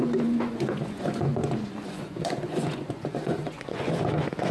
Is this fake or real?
fake